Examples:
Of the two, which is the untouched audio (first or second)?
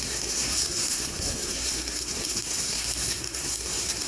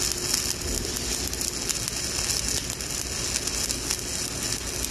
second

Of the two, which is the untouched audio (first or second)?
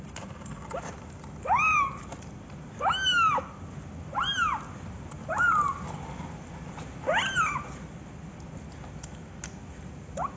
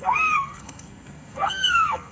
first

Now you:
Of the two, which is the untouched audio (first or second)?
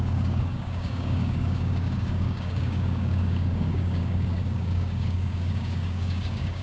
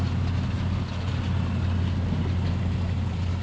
second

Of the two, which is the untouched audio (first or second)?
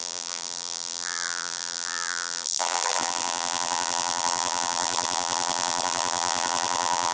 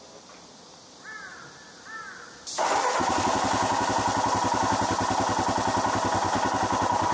second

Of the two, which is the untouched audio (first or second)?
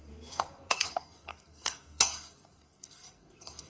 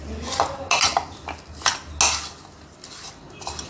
second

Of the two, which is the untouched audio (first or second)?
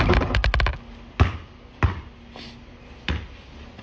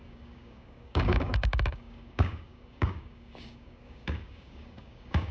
first